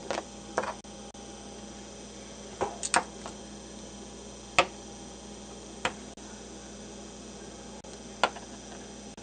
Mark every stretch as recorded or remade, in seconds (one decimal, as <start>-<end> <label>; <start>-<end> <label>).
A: 0.0-9.2 recorded